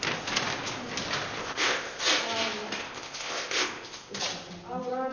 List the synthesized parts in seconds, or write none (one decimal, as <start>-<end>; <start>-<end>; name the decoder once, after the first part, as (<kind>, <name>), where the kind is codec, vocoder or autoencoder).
1.4-2.0 (codec, ZipCodec); 2.8-4.2